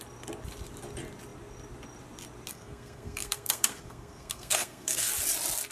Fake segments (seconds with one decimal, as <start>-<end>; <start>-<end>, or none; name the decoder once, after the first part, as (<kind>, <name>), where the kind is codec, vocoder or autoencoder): 2.5-5.1 (codec, SNAC)